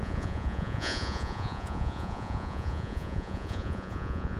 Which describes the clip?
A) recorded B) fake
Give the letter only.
B